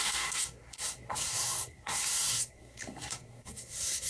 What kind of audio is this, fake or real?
fake